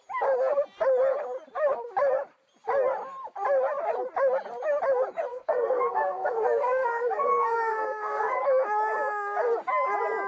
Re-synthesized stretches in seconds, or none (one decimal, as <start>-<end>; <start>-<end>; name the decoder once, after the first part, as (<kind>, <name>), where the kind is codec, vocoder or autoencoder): 5.3-8.4 (codec, SNAC)